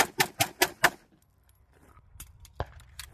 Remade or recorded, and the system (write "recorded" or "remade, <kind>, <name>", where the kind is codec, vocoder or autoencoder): recorded